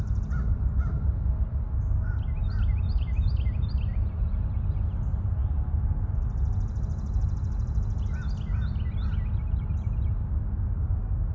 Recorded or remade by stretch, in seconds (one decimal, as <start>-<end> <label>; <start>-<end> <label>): 0.0-2.4 recorded; 2.4-4.5 remade; 4.5-11.3 recorded